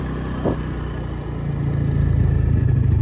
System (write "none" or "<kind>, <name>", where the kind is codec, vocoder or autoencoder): none